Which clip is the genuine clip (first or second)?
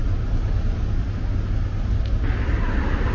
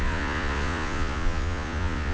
first